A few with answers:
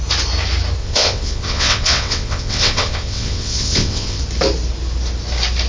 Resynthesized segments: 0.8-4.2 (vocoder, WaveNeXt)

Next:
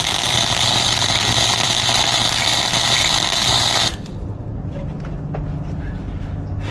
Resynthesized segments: none

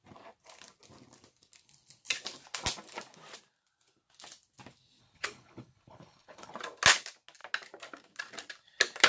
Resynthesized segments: 5.0-6.5 (codec, HILCodec)